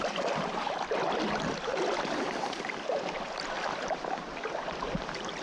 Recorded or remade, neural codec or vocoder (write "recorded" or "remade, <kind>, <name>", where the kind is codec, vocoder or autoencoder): recorded